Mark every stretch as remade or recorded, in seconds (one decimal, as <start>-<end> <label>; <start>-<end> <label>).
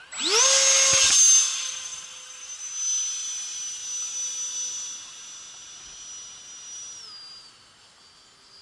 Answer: 0.0-8.6 recorded